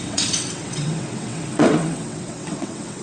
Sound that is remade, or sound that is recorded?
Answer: remade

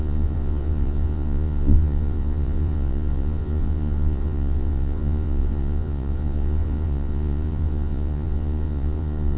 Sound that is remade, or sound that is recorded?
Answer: remade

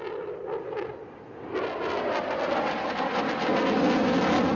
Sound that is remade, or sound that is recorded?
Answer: recorded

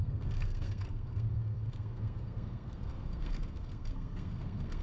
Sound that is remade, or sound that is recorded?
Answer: remade